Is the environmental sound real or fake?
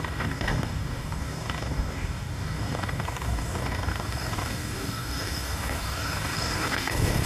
fake